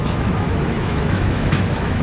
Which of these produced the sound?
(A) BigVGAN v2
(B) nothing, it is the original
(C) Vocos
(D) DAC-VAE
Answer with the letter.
D